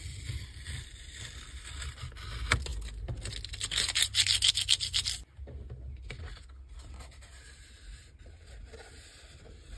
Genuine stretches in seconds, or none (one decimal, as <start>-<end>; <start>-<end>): 0.0-9.8